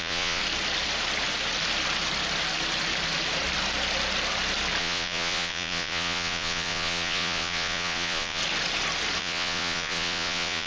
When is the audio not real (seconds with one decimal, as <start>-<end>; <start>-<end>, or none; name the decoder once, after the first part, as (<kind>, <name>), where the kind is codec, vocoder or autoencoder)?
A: 0.0-0.4 (vocoder, Vocos); 4.8-8.4; 9.2-10.7